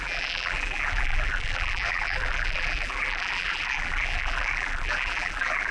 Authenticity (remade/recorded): remade